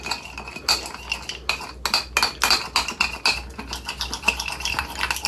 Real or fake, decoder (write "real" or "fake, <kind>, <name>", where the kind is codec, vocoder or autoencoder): real